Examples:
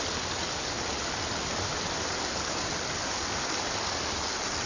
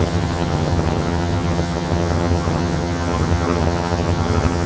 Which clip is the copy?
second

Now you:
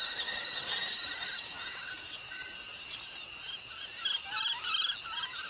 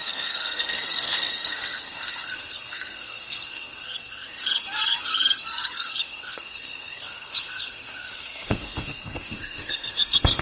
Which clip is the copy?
second